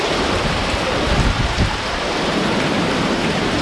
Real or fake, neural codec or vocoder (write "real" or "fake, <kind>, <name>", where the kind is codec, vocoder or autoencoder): fake, vocoder, BigVGAN v2